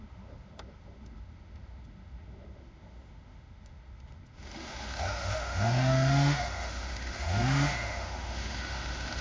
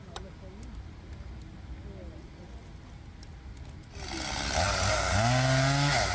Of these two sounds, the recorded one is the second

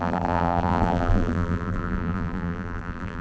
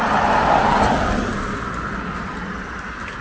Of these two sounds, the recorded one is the second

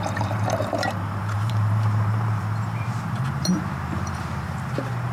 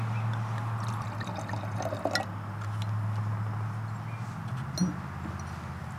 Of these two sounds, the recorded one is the second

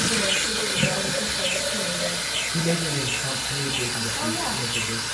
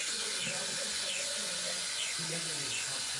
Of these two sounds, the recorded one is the first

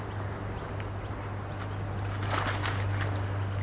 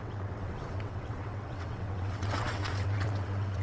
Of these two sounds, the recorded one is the first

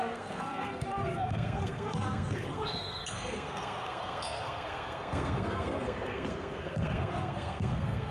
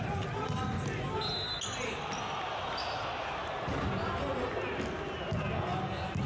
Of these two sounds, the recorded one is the second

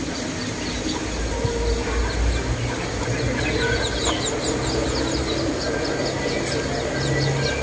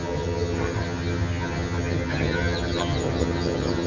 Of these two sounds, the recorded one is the first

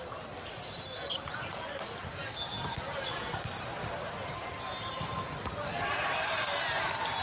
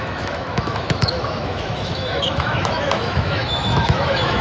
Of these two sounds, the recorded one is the first